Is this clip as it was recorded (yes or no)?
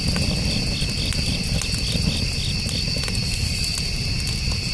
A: yes